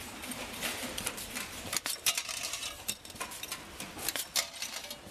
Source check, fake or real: real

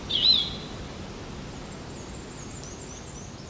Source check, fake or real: real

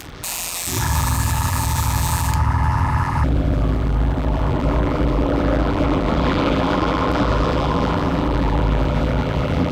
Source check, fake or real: fake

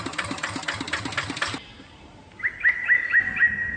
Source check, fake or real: real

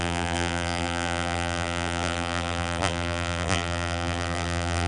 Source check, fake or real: fake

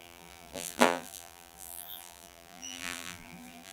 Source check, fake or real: fake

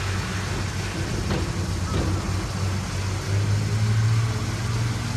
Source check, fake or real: real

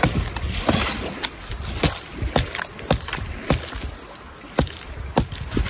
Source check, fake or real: real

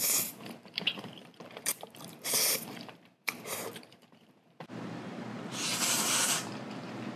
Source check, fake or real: fake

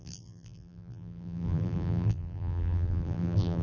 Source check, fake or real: fake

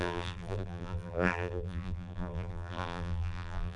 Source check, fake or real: fake